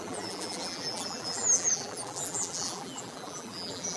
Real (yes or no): no